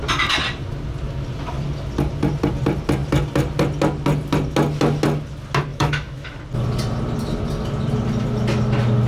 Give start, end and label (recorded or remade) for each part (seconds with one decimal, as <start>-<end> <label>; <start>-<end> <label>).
0.0-5.7 recorded; 5.7-6.4 remade; 6.4-9.1 recorded